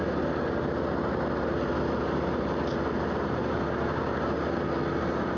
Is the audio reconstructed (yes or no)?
no